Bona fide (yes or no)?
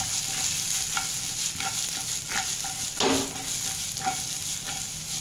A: yes